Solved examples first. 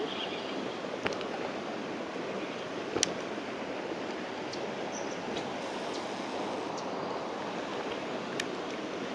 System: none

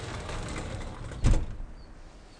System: none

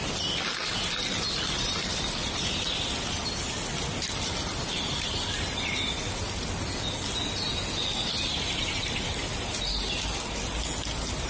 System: none